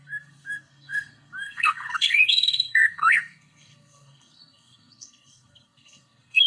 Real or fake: fake